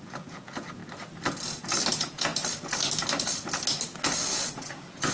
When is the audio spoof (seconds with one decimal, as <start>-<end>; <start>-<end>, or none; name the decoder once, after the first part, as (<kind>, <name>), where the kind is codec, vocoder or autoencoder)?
0.0-0.8 (vocoder, Vocos); 1.9-2.3; 4.3-5.1